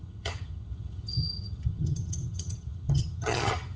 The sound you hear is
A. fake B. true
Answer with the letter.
A